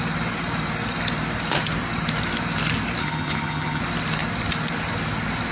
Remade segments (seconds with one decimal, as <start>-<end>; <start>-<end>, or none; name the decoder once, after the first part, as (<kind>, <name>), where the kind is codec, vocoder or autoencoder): 3.0-3.8 (vocoder, HiFi-GAN)